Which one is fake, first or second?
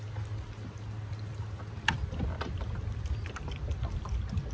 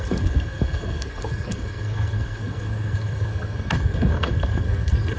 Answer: second